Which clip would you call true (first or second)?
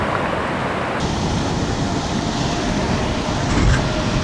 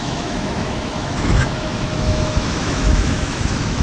first